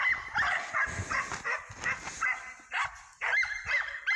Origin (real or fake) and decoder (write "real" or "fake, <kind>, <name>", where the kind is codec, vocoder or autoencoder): real